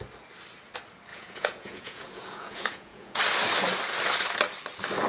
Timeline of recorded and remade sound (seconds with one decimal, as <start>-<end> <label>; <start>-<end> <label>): 0.0-1.1 recorded; 1.1-3.2 remade; 3.2-5.1 recorded